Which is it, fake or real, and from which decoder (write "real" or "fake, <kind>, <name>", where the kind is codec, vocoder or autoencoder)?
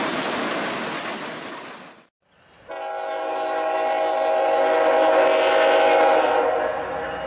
real